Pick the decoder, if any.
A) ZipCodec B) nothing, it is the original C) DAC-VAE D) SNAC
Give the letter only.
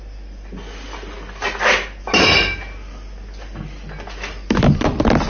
B